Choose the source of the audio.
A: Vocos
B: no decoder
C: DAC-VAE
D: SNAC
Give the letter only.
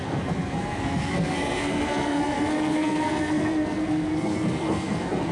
D